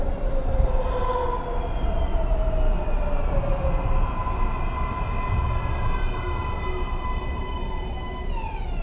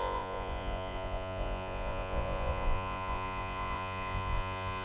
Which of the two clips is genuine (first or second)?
first